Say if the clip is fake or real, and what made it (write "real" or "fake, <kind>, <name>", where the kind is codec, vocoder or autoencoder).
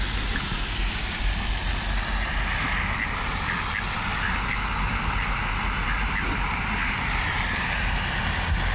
real